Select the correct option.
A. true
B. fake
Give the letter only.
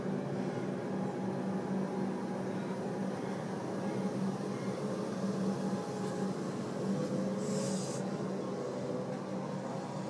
A